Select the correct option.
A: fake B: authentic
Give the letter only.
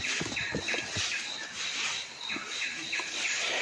B